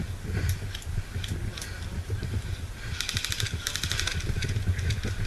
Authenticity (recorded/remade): recorded